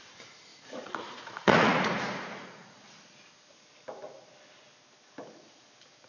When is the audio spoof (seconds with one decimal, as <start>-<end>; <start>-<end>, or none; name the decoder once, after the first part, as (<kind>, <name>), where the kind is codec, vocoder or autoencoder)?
0.5-2.8 (vocoder, Vocos)